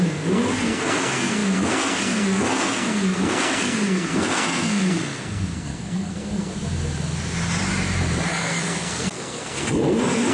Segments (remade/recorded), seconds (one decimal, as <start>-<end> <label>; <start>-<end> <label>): 0.0-6.5 remade; 6.5-8.3 recorded; 8.3-10.3 remade